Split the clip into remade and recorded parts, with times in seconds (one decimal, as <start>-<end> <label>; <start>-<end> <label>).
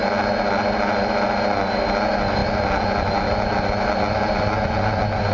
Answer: 0.0-5.3 recorded